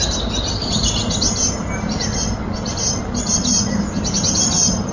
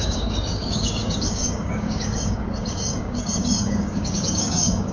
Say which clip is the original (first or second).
first